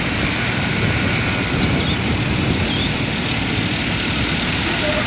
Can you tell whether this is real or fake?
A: real